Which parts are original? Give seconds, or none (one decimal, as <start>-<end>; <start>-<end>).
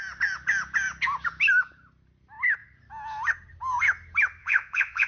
0.0-4.4